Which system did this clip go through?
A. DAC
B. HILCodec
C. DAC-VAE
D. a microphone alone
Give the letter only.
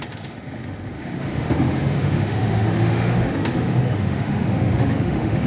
C